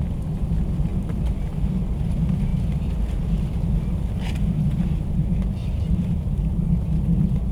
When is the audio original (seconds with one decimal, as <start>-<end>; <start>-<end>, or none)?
0.0-5.6; 6.5-7.5